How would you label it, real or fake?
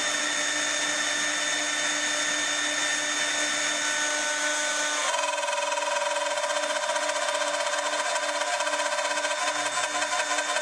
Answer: real